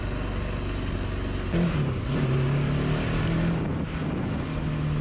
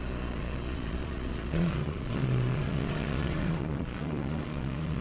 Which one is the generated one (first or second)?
second